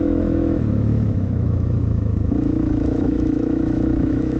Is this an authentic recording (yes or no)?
no